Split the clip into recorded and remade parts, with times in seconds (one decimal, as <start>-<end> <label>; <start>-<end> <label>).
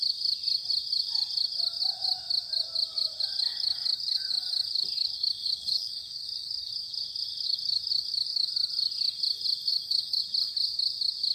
0.0-3.5 recorded; 3.5-8.5 remade; 8.5-9.7 recorded; 9.7-10.2 remade; 10.2-11.3 recorded